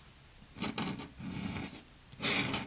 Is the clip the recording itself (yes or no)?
yes